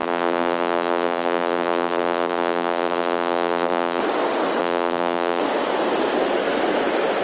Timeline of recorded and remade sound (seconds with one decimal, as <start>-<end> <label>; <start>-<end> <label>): 0.0-4.0 remade; 4.0-4.6 recorded; 4.6-5.4 remade; 5.4-7.2 recorded